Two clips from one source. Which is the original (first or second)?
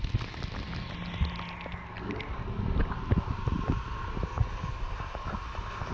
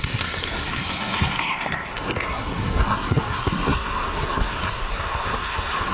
first